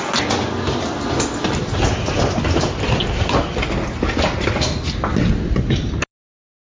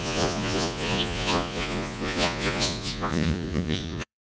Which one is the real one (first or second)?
first